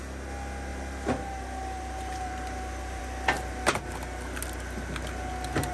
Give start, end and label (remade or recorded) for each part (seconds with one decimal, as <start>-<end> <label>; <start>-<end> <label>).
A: 0.0-0.7 recorded; 0.7-3.0 remade; 3.0-5.7 recorded